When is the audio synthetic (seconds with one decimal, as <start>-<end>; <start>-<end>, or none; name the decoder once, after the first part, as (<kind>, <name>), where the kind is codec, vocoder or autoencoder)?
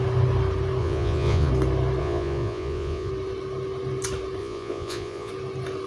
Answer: 0.8-1.5 (vocoder, Vocos); 2.0-3.1; 4.4-5.3